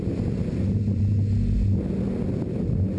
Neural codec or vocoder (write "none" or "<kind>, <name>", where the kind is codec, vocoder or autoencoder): none